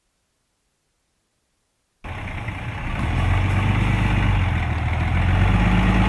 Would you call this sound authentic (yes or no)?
yes